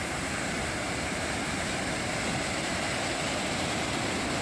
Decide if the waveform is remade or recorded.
remade